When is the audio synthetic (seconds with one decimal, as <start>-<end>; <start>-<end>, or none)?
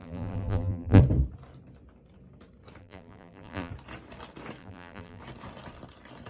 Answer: 0.0-1.0; 2.8-3.7; 4.6-5.2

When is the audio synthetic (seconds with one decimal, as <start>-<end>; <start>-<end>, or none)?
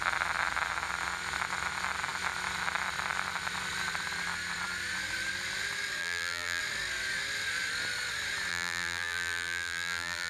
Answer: 6.0-6.6; 8.5-10.3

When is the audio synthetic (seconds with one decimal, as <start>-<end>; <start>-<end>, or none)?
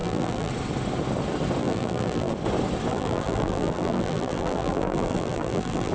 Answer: 0.0-0.5; 1.6-2.3; 2.9-5.9